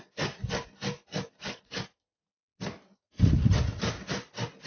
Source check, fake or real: real